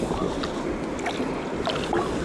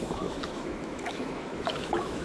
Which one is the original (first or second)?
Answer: first